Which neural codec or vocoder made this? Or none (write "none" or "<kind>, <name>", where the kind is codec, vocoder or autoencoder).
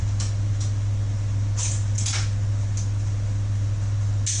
none